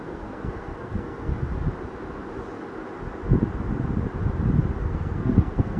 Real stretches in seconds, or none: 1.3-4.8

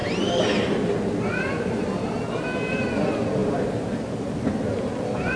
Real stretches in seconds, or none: 0.0-5.4

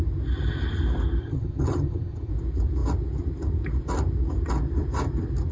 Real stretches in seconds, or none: 0.0-1.2; 2.3-5.5

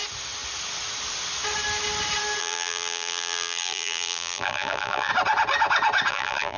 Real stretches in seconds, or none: 0.0-2.4; 5.1-6.1

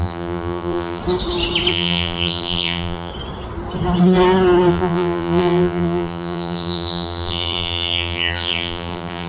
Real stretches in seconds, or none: 1.0-1.7; 3.1-4.7

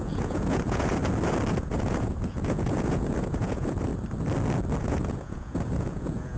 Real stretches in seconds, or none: 1.0-1.5; 3.9-4.8

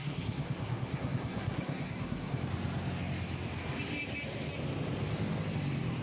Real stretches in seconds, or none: 2.4-6.0

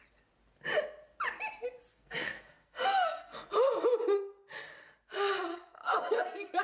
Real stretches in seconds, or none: 0.0-1.9; 3.5-5.5